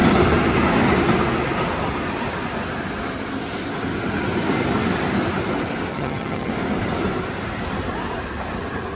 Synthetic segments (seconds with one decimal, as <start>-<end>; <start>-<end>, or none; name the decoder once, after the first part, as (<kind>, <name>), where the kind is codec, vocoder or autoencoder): 5.9-6.5 (vocoder, HiFi-GAN)